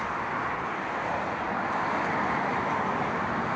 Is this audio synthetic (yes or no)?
no